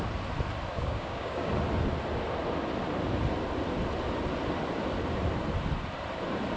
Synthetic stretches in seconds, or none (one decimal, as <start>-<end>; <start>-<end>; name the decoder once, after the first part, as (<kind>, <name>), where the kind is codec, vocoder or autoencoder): 0.7-1.5 (codec, DAC)